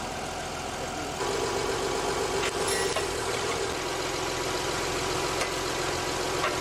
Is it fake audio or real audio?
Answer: real